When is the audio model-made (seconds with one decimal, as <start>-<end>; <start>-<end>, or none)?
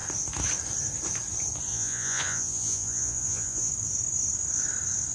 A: 1.7-3.7